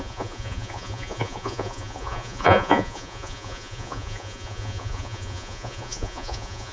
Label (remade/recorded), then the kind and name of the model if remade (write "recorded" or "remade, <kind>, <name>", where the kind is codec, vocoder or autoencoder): remade, vocoder, Vocos